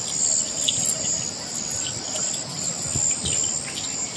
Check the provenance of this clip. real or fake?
real